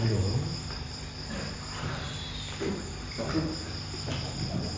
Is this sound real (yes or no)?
yes